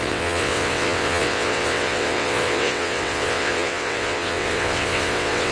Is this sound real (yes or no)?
no